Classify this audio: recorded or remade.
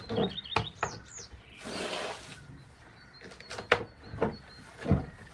recorded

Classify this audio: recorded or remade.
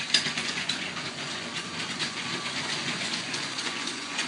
remade